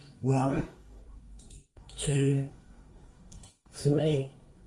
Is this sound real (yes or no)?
no